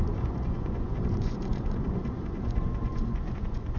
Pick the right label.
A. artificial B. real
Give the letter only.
A